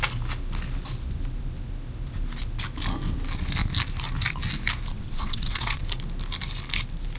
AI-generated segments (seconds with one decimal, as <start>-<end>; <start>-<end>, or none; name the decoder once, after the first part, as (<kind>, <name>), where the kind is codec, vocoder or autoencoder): 4.9-5.8 (vocoder, WaveNeXt)